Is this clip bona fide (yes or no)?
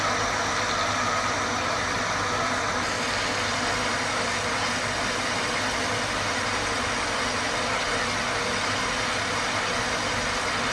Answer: yes